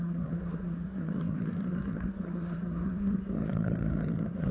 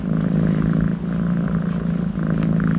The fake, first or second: first